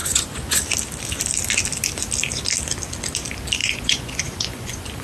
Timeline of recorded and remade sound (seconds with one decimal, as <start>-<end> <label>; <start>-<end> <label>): 0.0-0.6 remade; 0.6-3.6 recorded; 3.6-5.0 remade